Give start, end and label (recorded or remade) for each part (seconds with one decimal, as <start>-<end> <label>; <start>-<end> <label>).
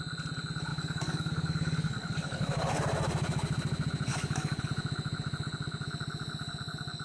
0.0-0.7 recorded; 0.7-2.7 remade; 2.7-4.1 recorded; 4.1-4.6 remade; 4.6-7.0 recorded